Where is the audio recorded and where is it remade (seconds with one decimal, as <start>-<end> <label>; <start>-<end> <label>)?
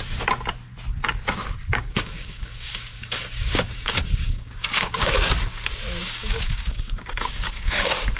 0.0-1.7 recorded; 1.7-5.1 remade; 5.1-6.0 recorded; 6.0-8.2 remade